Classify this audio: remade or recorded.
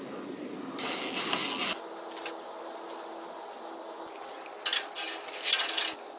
recorded